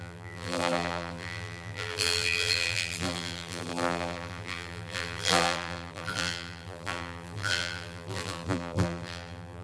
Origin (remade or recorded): remade